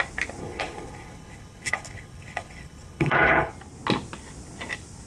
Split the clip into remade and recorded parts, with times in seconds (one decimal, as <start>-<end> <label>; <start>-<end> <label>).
0.0-0.4 recorded; 0.4-3.5 remade; 3.5-5.1 recorded